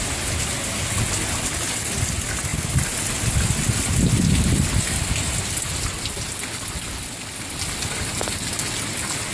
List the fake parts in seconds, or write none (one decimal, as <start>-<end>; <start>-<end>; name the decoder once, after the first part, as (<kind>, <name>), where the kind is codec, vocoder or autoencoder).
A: none